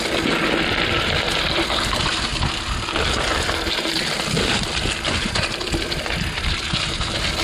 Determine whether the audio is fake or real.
real